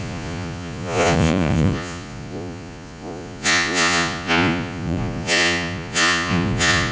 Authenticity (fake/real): fake